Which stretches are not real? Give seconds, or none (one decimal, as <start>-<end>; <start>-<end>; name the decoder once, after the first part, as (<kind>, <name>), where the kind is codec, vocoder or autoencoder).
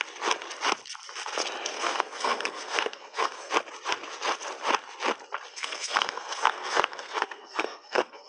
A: 1.7-3.5 (codec, SNAC); 5.5-8.3